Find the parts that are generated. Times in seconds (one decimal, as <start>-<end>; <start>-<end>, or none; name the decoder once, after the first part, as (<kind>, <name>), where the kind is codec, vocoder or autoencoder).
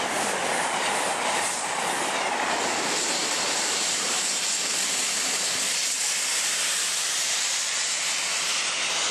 3.2-4.4 (vocoder, BigVGAN v2); 6.7-7.9